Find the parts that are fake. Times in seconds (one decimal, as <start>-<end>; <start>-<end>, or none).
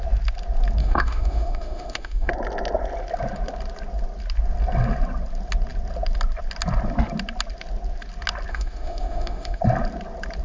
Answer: 0.8-2.3; 8.5-9.6